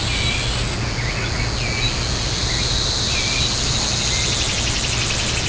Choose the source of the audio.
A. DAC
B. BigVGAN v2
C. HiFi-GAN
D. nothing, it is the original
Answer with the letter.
D